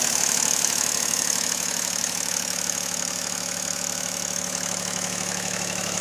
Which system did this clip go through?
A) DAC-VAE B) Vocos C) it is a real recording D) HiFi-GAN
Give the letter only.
A